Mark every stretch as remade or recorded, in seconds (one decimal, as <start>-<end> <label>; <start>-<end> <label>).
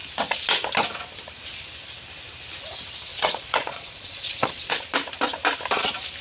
0.0-3.1 recorded; 3.1-4.8 remade; 4.8-6.2 recorded